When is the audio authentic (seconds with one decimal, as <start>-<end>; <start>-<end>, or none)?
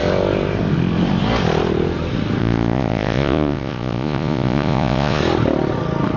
0.0-2.4; 5.2-6.2